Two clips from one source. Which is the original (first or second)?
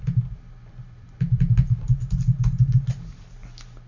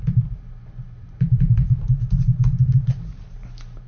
first